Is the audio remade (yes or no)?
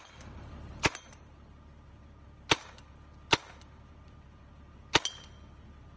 no